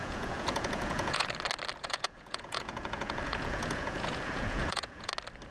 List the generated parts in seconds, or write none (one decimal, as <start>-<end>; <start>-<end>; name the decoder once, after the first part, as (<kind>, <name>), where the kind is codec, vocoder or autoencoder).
0.0-1.3 (vocoder, Vocos); 1.8-5.1